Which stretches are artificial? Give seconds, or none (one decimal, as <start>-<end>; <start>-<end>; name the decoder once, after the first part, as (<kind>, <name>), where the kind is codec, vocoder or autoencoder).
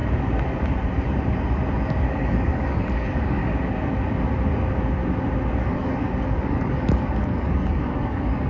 2.1-3.4 (codec, DAC); 5.6-8.5